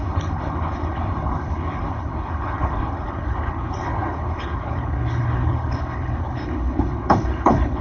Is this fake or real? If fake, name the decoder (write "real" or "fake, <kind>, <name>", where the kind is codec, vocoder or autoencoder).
fake, codec, HILCodec